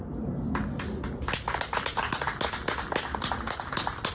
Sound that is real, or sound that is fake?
real